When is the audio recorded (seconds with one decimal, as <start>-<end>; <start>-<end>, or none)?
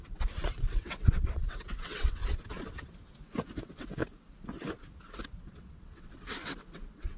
2.2-3.6; 4.0-5.6